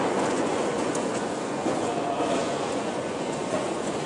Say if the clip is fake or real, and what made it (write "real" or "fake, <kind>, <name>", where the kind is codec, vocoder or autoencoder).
fake, vocoder, Vocos